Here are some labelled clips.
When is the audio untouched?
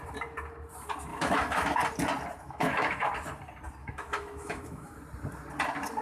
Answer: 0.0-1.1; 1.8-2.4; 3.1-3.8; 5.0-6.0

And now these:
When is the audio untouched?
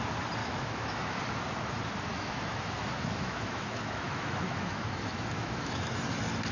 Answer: 0.0-0.4; 1.2-2.1; 5.9-6.5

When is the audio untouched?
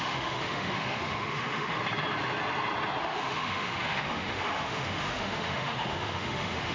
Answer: 1.8-3.0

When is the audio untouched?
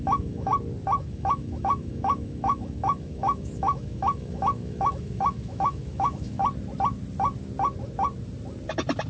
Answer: 0.5-1.0; 6.4-9.1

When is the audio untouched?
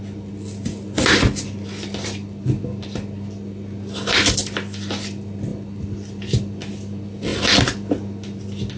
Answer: 0.0-8.8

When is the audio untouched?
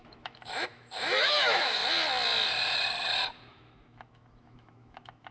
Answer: 1.8-3.5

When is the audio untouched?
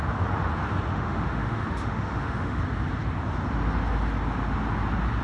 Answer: 0.0-0.9; 2.6-5.2